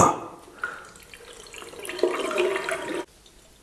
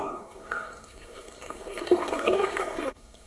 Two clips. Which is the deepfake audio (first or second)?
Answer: second